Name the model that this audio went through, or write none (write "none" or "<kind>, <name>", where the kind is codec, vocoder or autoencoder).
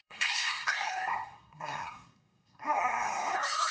codec, SNAC